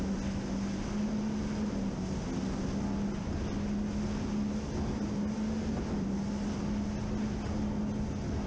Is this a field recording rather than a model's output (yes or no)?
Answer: yes